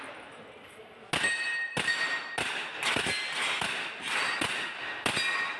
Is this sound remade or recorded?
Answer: recorded